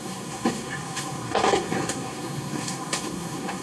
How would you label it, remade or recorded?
remade